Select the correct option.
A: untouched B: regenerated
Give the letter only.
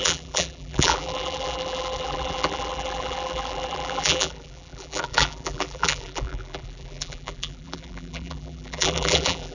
B